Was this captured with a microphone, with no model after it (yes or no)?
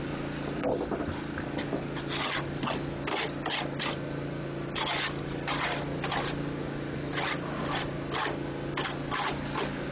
yes